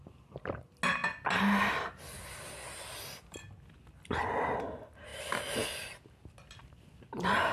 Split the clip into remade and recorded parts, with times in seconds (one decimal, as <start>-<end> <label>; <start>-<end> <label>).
0.0-7.5 recorded